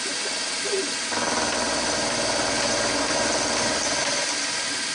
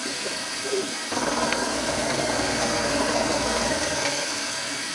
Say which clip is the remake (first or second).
second